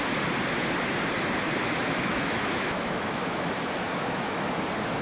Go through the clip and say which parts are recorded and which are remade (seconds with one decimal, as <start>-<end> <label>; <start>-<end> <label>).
0.0-1.6 recorded; 1.6-4.6 remade; 4.6-5.0 recorded